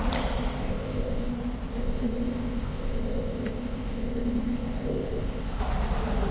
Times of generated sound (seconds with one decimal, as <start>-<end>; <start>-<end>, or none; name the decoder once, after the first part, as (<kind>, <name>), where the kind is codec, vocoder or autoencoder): 0.6-1.3 (codec, ZipCodec); 1.8-5.6